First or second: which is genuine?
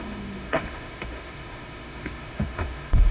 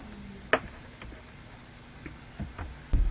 second